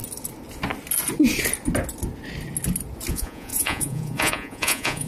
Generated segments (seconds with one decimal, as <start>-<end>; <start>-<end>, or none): 3.1-5.1